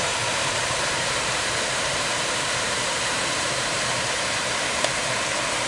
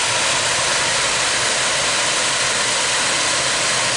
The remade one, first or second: first